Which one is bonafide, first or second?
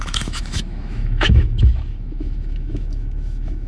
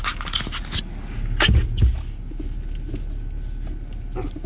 second